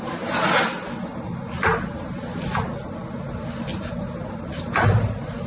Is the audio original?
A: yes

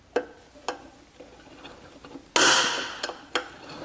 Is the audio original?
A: yes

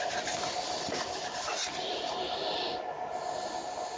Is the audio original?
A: yes